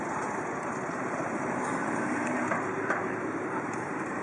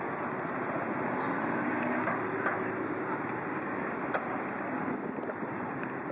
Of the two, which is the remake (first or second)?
first